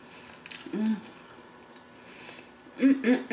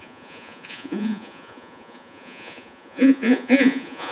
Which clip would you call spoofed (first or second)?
second